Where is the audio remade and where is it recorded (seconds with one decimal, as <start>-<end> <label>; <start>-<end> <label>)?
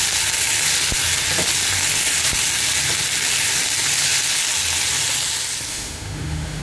0.0-5.7 recorded; 5.7-6.6 remade